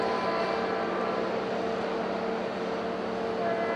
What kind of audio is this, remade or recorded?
recorded